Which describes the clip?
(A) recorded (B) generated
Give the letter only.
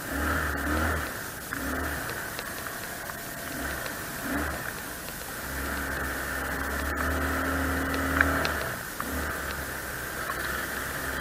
A